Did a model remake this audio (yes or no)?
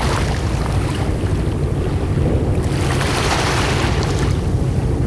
no